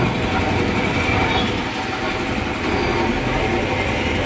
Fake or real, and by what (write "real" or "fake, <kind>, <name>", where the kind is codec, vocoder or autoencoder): real